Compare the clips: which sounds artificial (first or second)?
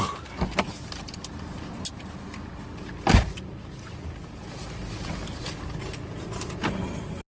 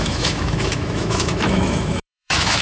second